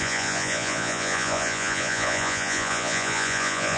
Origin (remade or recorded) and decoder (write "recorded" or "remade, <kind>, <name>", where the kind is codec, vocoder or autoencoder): remade, vocoder, Vocos